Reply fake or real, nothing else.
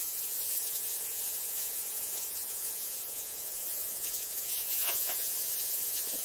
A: fake